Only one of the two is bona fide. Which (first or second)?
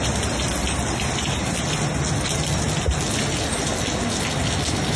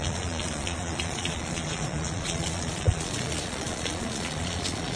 first